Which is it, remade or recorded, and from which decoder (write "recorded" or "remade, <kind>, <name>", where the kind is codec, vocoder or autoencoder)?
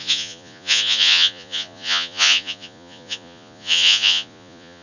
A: remade, vocoder, Vocos